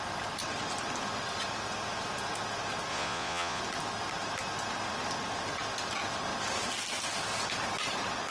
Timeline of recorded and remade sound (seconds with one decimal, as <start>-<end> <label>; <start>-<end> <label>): 0.0-2.9 recorded; 2.9-3.6 remade; 3.6-8.3 recorded